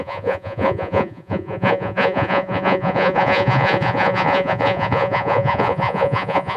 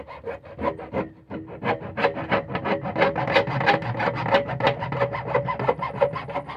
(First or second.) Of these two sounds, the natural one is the second